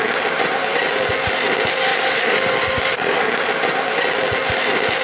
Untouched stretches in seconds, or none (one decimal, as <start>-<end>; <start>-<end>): 0.0-1.9; 2.8-5.0